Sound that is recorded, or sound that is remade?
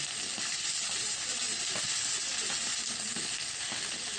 recorded